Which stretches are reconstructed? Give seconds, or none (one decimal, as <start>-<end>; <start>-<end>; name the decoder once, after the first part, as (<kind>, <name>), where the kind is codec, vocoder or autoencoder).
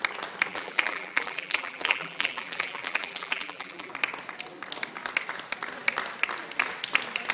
0.5-3.9 (vocoder, BigVGAN v2)